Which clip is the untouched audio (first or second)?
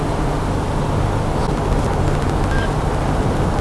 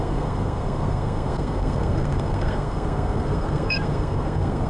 first